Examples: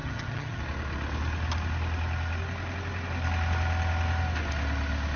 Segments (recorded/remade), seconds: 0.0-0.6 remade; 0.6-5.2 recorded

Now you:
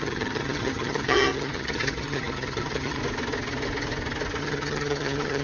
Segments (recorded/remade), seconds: 0.0-3.0 remade; 3.0-4.4 recorded; 4.4-5.4 remade

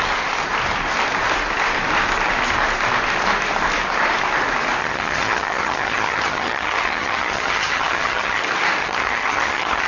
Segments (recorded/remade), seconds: 0.0-4.8 recorded; 4.8-8.4 remade; 8.4-8.8 recorded; 8.8-9.9 remade

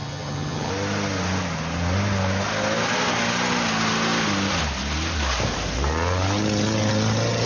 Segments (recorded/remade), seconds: 0.0-0.7 remade; 0.7-7.5 recorded